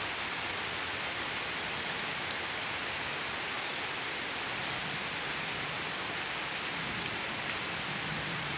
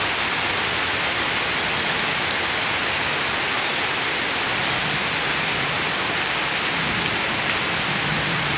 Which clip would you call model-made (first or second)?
first